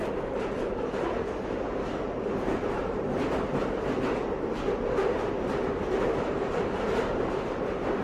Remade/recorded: recorded